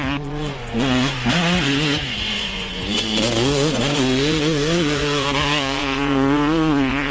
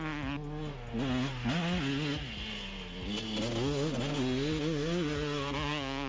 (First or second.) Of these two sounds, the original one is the second